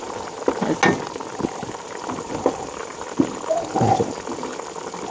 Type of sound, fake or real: real